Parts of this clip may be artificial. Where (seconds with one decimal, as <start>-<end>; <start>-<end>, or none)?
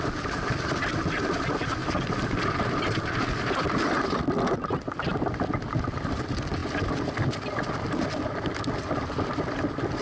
none